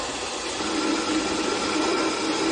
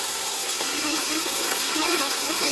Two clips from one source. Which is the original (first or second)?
first